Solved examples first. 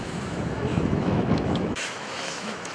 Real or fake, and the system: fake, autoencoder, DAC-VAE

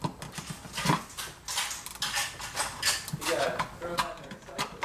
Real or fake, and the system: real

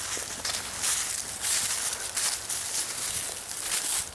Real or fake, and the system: real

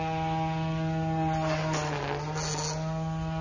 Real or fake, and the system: real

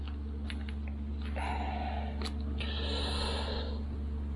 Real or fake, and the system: real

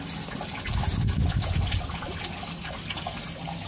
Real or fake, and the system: real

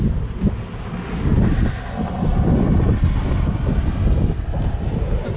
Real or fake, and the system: real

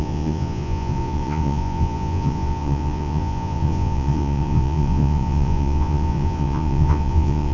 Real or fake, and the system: fake, vocoder, Vocos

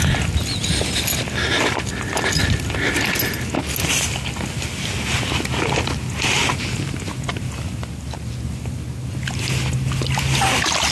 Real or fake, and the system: real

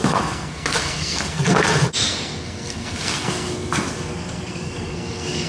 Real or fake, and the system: fake, codec, SNAC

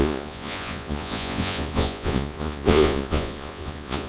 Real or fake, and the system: fake, vocoder, Vocos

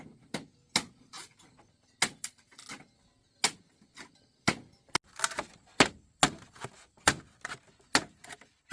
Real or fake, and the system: real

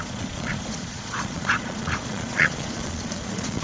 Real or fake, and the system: fake, vocoder, Vocos